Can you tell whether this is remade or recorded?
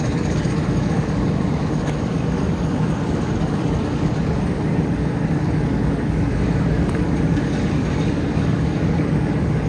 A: remade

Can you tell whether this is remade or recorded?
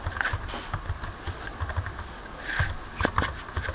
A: recorded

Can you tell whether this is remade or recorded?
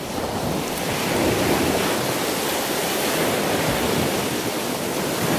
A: recorded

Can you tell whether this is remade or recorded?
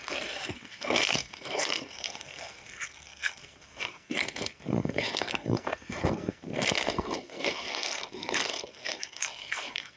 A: remade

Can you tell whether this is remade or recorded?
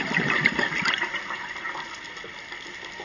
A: recorded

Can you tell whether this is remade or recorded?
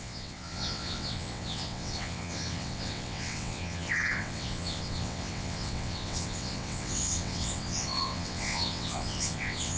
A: remade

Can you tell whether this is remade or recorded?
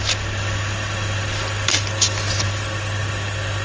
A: recorded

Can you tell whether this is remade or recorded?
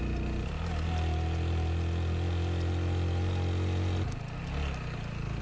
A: recorded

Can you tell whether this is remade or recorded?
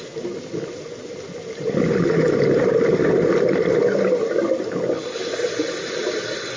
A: recorded